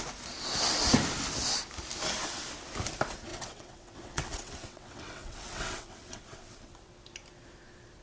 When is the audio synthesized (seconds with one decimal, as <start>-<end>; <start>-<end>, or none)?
3.3-6.9